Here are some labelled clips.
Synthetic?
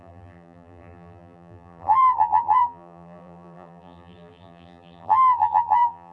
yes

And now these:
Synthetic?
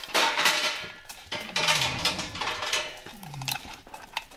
yes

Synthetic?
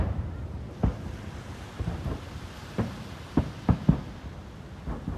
no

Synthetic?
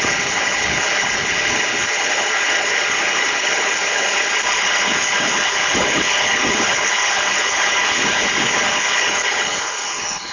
yes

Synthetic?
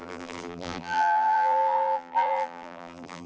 yes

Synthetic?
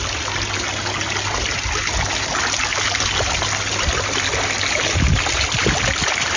no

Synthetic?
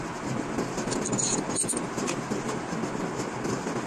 no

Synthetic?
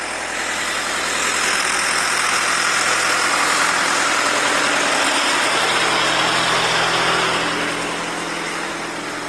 no